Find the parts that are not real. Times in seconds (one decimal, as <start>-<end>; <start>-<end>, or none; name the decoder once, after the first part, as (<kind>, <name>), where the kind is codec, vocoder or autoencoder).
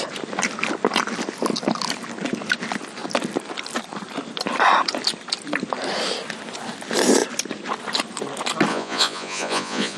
8.7-10.0 (vocoder, Vocos)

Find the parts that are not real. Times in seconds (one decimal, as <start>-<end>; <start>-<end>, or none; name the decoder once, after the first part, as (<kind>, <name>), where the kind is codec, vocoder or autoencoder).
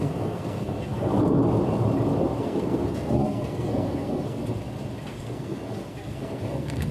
0.0-1.4 (codec, SNAC); 2.4-4.4; 5.0-6.9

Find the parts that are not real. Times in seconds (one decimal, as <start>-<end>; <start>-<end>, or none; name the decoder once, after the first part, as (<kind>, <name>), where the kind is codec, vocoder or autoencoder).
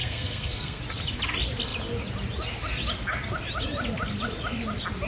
0.0-0.8 (codec, SNAC)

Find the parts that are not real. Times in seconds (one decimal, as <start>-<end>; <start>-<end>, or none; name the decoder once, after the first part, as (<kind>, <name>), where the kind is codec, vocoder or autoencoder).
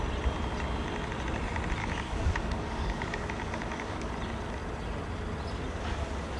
1.8-4.1 (codec, DAC)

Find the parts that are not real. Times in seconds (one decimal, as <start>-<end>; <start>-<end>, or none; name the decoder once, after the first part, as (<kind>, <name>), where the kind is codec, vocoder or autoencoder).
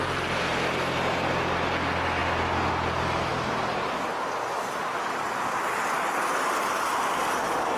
none